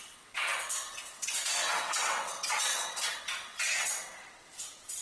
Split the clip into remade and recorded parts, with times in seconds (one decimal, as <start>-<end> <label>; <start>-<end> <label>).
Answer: 0.0-5.0 remade